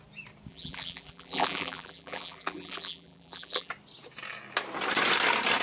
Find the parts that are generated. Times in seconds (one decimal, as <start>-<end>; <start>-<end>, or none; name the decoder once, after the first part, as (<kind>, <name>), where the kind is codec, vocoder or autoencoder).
0.5-3.7 (vocoder, BigVGAN v2)

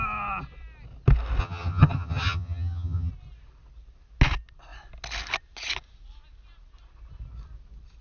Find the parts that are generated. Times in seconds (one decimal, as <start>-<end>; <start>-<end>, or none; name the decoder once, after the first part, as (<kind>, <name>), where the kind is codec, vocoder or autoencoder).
1.4-3.1 (vocoder, HiFi-GAN)

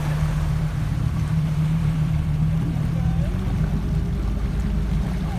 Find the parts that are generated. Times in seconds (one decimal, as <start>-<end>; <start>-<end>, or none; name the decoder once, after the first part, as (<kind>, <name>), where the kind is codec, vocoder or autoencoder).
0.6-3.1 (vocoder, BigVGAN v2)

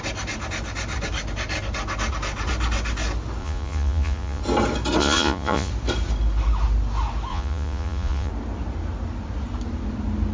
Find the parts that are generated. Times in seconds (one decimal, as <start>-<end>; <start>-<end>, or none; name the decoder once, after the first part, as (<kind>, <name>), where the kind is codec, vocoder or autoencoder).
3.4-4.4 (vocoder, Vocos); 5.0-5.7; 7.3-8.3